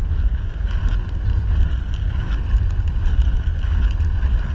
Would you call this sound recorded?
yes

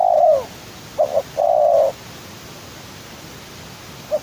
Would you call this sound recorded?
yes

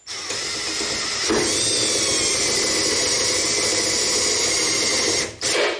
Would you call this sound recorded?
yes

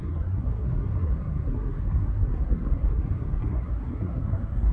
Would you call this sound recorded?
no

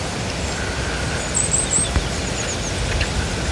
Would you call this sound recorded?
yes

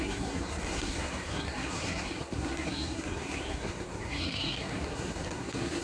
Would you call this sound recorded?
no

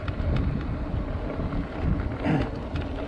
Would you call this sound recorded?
yes